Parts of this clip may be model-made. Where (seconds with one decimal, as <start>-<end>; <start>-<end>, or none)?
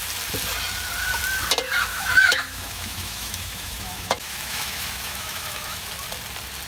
1.9-5.9